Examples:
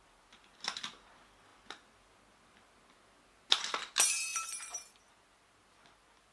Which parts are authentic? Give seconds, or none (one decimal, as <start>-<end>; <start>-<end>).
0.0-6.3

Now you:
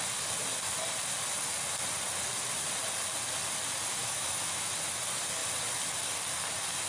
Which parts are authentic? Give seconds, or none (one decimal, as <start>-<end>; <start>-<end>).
0.0-4.0; 4.7-6.9

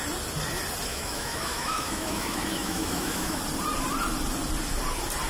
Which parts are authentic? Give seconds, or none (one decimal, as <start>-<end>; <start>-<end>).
0.0-0.9; 3.4-5.3

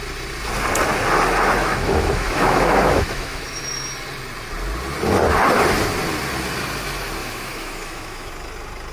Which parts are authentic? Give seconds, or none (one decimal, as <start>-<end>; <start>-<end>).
0.0-1.6; 3.6-7.2; 8.3-8.9

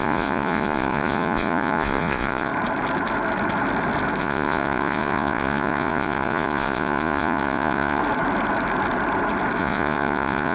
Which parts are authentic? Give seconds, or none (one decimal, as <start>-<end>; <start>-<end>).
2.5-4.2; 8.0-9.6